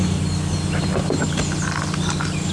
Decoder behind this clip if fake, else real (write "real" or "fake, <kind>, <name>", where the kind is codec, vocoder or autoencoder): real